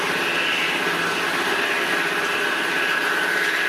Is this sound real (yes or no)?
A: yes